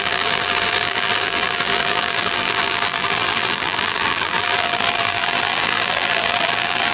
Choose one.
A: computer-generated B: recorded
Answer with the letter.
A